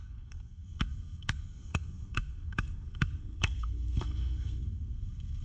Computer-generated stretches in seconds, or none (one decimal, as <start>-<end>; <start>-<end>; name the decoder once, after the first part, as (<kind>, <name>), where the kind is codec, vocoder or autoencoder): 0.0-5.4 (codec, SNAC)